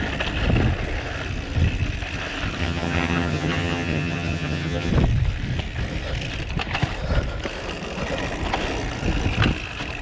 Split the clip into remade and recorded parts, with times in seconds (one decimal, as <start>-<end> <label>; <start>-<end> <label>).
0.0-2.6 recorded; 2.6-4.9 remade; 4.9-10.0 recorded